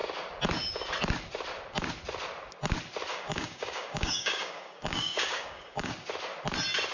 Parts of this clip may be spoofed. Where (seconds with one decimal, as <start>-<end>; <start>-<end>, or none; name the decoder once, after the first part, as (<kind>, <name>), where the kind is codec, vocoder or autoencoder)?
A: 3.1-5.9 (codec, DAC)